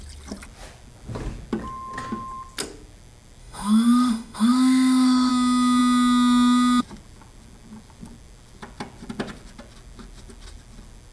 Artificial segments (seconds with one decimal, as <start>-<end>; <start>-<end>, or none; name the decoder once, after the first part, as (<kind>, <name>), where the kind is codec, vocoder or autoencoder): 3.4-5.3 (autoencoder, DAC-VAE)